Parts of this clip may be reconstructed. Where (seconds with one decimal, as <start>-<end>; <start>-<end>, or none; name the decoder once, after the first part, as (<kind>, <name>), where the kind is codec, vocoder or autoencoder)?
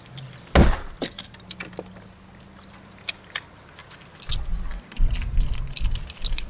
none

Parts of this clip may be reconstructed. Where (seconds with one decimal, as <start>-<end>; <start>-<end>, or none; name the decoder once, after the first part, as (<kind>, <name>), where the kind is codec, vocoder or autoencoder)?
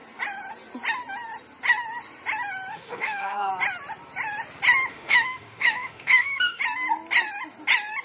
2.7-3.5 (autoencoder, DAC-VAE); 4.9-6.6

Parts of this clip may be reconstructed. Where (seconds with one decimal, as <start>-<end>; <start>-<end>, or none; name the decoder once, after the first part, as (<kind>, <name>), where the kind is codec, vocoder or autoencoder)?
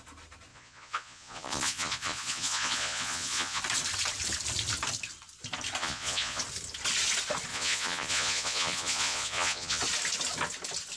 0.5-3.6 (vocoder, Vocos); 5.8-6.4; 7.5-9.8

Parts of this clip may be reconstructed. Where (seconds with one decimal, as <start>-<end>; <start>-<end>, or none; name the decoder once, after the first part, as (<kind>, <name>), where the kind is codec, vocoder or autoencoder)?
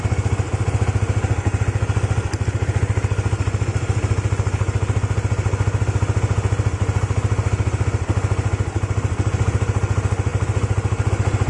none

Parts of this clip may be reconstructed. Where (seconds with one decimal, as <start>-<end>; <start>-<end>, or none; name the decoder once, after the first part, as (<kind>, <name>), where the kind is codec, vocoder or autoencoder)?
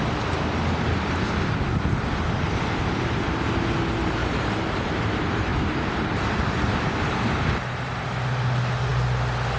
4.2-4.9 (vocoder, BigVGAN v2); 5.5-7.6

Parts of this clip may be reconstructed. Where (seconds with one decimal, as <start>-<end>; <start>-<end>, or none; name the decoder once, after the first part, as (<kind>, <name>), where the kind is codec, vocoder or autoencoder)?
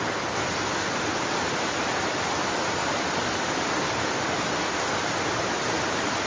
2.8-3.8 (vocoder, BigVGAN v2)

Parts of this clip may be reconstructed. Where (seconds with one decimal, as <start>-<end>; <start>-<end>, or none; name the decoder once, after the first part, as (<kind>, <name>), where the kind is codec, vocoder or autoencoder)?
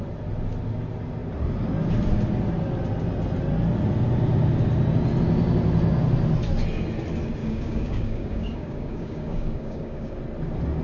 7.4-10.2 (codec, DAC)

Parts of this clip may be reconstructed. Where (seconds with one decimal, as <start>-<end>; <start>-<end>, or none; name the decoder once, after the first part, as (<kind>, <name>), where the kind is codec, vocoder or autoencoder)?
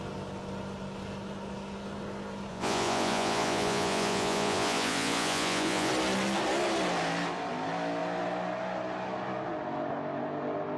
2.5-5.9 (vocoder, Vocos)